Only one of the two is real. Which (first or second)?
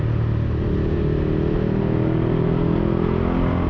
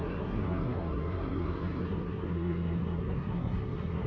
first